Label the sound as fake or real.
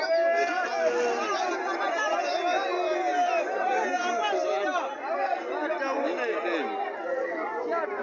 real